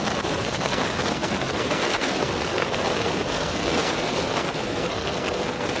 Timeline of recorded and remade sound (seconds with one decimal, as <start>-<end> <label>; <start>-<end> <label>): 0.0-5.8 remade